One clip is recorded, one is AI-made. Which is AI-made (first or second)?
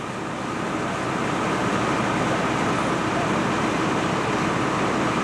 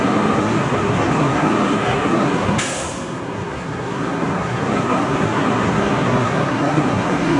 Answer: second